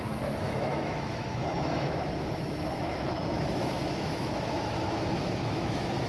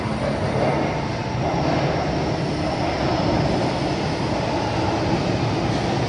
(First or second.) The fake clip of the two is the first